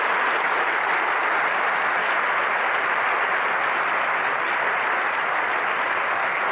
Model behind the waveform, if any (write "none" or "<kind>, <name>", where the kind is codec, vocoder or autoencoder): none